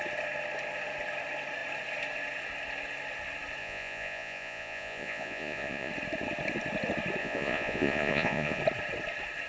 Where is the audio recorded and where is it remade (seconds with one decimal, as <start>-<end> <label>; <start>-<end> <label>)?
0.0-3.6 recorded; 3.6-5.9 remade; 5.9-7.2 recorded; 7.2-8.6 remade; 8.6-9.5 recorded